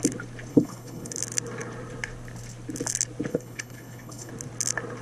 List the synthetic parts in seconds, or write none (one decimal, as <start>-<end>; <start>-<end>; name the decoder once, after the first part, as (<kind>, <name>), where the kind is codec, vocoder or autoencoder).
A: 0.5-1.2 (codec, HILCodec); 3.3-4.3